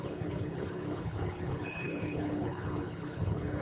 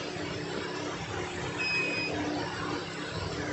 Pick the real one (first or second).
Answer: second